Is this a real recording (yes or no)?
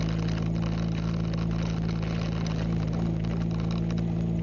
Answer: yes